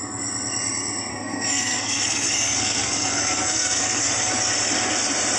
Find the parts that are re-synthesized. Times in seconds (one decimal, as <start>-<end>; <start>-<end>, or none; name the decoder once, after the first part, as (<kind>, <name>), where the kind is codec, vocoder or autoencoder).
1.1-4.1 (codec, SNAC)